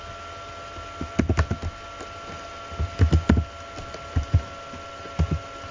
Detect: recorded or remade recorded